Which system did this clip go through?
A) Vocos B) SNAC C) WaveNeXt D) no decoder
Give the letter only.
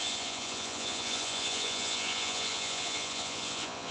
A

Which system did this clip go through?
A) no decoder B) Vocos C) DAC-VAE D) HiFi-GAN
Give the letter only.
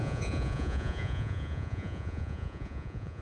B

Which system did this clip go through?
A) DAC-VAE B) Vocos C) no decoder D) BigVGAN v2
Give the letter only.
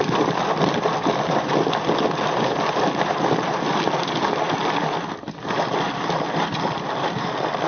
C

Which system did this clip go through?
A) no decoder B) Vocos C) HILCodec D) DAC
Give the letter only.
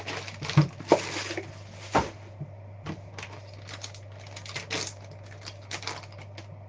A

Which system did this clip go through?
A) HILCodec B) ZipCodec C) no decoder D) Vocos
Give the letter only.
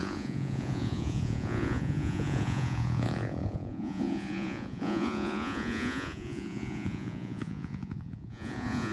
D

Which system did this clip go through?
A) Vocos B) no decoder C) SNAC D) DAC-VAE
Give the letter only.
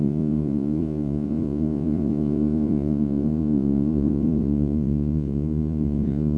A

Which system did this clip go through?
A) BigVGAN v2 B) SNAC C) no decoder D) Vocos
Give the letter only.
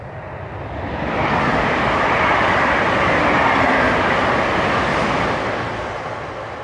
C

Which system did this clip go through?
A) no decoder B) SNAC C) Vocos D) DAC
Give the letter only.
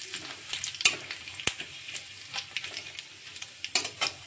A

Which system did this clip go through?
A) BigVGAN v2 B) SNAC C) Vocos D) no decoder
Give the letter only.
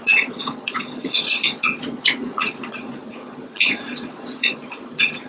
C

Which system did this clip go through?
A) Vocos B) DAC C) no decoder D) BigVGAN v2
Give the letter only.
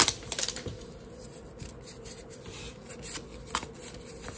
C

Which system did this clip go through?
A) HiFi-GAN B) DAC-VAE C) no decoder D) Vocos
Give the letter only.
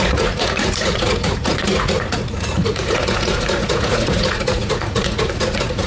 D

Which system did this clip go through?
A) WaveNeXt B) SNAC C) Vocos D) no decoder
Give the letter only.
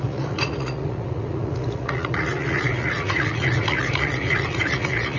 C